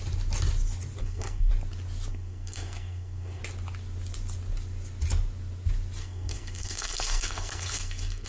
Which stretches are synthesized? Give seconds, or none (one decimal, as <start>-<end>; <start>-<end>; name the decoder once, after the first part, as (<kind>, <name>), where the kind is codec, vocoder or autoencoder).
1.0-1.5 (codec, SNAC); 2.1-3.4; 6.0-8.3